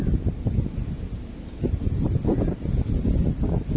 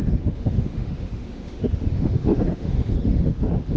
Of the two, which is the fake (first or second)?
second